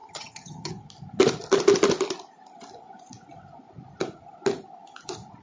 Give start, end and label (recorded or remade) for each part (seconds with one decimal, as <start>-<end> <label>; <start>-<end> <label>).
0.0-0.7 remade; 0.7-5.4 recorded